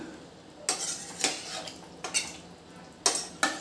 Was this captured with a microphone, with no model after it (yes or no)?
yes